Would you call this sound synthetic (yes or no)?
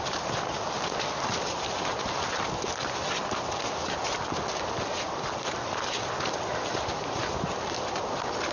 no